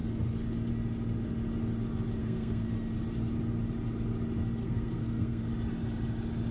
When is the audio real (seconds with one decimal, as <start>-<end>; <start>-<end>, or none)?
0.0-2.2; 2.7-4.6; 5.5-6.5